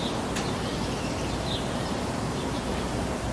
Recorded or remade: recorded